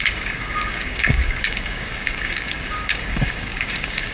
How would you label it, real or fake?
fake